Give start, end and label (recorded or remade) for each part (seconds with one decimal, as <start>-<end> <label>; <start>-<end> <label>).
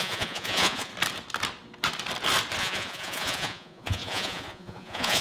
0.0-0.9 remade; 0.9-2.6 recorded; 2.6-5.2 remade